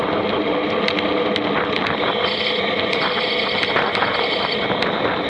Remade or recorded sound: recorded